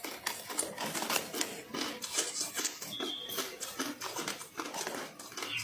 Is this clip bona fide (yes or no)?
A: yes